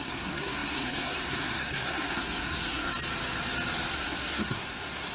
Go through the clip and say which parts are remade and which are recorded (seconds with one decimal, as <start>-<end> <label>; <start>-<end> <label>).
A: 0.0-2.9 remade; 2.9-3.9 recorded; 3.9-5.1 remade